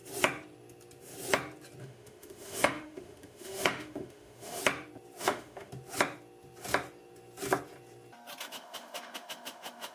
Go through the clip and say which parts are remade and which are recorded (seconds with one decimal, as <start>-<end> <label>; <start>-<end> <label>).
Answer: 0.0-1.8 recorded; 1.8-4.6 remade; 4.6-5.2 recorded; 5.2-5.7 remade; 5.7-8.4 recorded; 8.4-9.9 remade